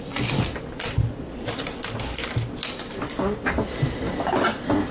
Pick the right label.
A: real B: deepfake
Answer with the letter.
A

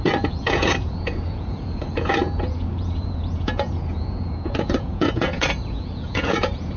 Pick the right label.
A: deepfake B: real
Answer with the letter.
A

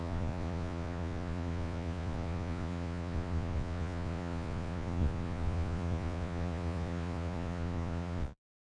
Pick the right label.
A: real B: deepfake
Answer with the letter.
B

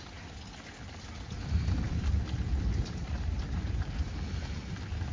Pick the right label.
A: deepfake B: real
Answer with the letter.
B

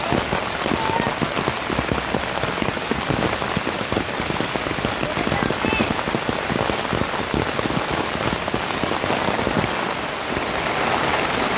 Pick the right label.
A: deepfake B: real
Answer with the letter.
B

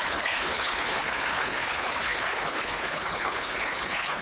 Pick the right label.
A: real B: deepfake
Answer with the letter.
B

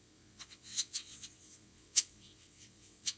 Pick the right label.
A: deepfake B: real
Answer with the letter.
A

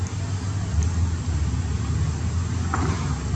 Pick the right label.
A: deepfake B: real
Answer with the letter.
B